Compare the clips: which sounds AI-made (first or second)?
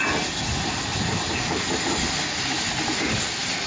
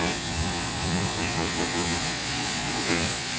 second